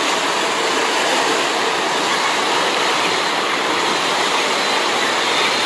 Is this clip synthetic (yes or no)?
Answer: no